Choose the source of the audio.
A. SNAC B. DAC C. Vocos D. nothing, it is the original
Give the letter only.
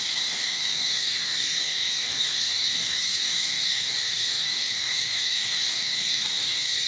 B